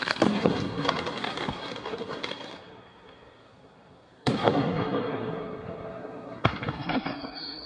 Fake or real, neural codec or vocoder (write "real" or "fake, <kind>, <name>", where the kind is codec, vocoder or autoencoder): fake, codec, SNAC